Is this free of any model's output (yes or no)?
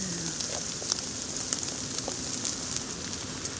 yes